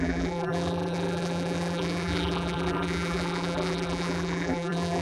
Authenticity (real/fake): fake